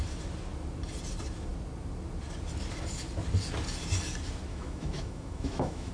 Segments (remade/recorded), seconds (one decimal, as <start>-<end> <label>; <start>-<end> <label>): 0.0-4.5 recorded; 4.5-5.9 remade

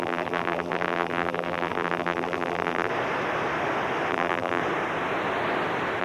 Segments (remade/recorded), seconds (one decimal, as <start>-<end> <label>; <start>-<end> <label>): 0.0-2.9 remade; 2.9-4.1 recorded; 4.1-4.6 remade; 4.6-6.0 recorded

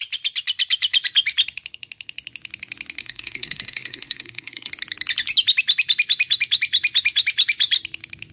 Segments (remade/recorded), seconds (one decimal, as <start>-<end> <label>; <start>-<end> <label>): 0.0-3.0 recorded; 3.0-4.7 remade; 4.7-8.3 recorded

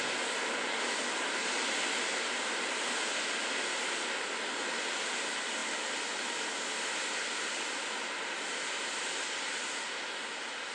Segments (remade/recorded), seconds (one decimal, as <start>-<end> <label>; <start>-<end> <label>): 0.0-10.7 recorded

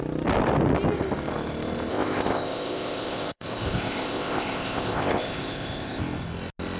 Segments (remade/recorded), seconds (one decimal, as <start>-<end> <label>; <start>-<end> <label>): 0.0-1.9 recorded; 1.9-6.0 remade; 6.0-6.8 recorded

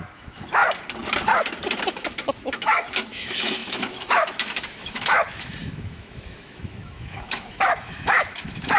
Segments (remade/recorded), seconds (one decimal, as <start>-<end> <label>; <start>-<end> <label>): 0.0-0.6 remade; 0.6-1.9 recorded; 1.9-8.8 remade